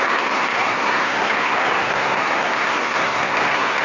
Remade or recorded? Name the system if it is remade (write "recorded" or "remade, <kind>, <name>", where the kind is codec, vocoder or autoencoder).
remade, codec, SNAC